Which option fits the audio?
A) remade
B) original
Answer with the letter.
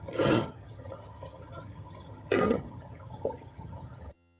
A